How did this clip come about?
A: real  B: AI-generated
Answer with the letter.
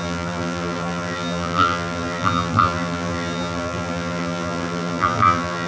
B